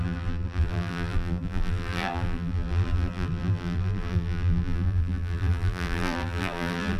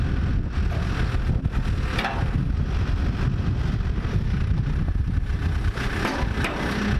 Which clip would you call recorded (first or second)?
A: second